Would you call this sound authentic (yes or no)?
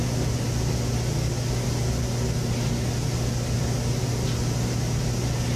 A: yes